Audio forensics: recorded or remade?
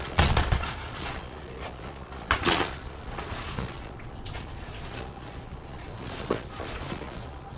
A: remade